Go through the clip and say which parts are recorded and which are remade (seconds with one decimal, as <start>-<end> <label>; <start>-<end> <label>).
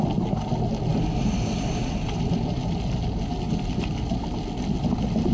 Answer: 0.0-5.3 recorded